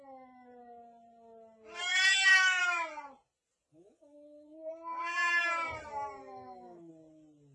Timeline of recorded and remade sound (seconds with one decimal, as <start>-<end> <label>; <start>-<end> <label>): 0.0-1.9 recorded; 1.9-2.6 remade; 2.6-3.7 recorded; 3.7-4.7 remade; 4.7-6.2 recorded; 6.2-6.9 remade; 6.9-7.5 recorded